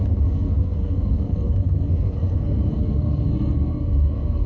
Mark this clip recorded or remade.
remade